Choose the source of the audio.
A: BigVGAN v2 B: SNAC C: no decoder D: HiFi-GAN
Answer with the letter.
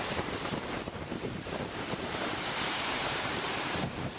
A